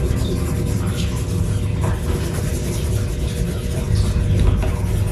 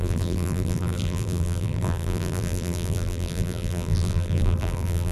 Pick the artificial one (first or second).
second